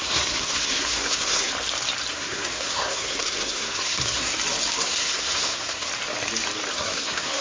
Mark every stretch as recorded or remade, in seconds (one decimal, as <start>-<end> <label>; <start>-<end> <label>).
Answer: 0.0-1.5 remade; 1.5-2.1 recorded; 2.1-4.3 remade; 4.3-4.8 recorded; 4.8-5.9 remade; 5.9-6.7 recorded; 6.7-7.4 remade